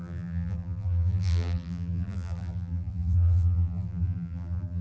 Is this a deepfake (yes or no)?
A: yes